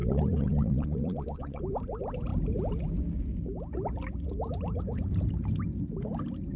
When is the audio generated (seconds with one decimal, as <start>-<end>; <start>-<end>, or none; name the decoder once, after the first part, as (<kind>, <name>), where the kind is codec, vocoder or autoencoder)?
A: 0.0-1.6 (vocoder, Vocos)